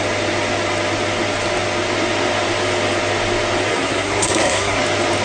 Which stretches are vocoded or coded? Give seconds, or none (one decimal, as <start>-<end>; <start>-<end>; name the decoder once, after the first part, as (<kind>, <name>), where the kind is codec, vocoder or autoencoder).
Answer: 3.7-4.8 (codec, SNAC)